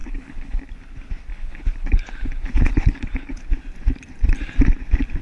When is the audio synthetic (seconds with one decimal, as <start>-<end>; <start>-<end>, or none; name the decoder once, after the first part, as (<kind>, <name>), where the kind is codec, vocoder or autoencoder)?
0.0-0.6 (codec, HILCodec); 1.3-3.4